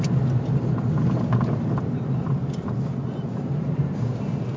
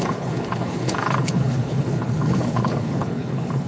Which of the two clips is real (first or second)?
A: first